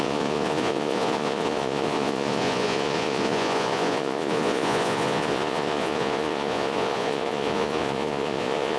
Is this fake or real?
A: fake